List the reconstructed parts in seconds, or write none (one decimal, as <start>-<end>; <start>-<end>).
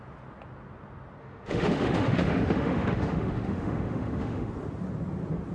1.2-4.5